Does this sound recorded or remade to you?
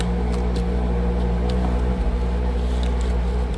recorded